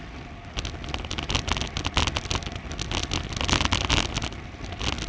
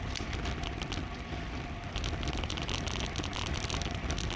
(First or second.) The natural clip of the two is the first